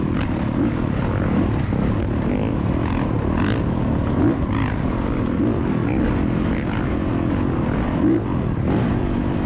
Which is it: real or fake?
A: real